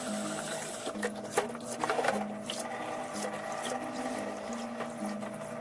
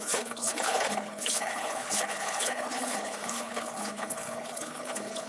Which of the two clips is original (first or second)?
first